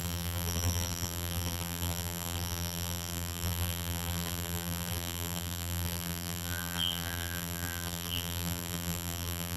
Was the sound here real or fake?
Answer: fake